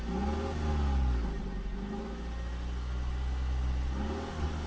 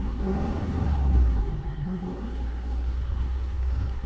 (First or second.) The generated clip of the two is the second